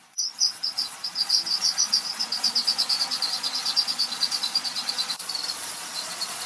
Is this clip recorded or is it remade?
remade